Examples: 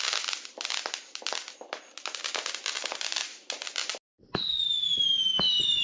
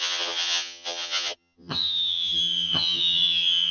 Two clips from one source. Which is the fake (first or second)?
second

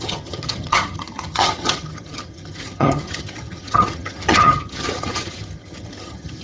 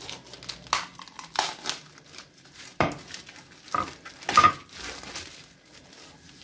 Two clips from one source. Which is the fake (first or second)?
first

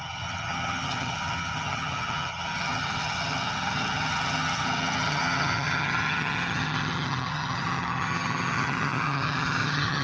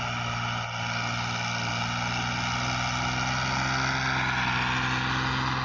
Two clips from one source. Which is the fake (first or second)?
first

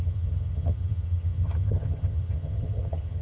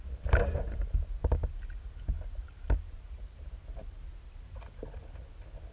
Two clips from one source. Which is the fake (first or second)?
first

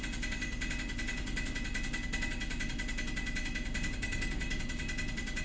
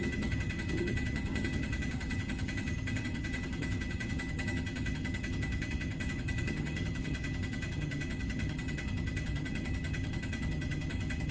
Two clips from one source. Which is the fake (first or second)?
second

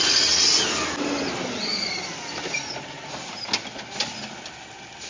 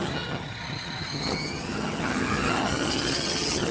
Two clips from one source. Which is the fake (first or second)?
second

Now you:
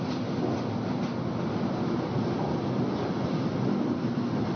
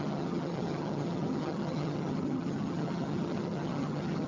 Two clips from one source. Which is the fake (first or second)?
second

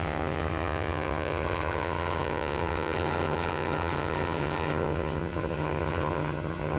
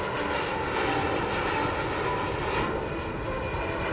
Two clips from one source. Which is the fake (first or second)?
first